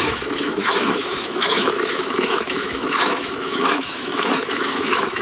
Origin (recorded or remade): remade